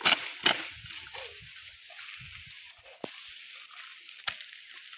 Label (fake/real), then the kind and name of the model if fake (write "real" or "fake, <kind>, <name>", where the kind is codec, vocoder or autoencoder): real